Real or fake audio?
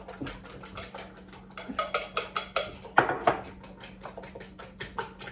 real